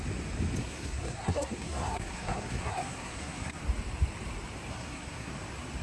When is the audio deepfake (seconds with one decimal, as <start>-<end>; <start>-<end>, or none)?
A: 0.6-3.6; 4.7-5.3